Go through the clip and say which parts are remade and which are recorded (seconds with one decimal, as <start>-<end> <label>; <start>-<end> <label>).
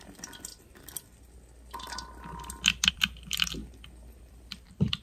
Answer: 0.0-0.5 remade; 0.5-2.9 recorded; 2.9-3.6 remade; 3.6-4.2 recorded; 4.2-5.0 remade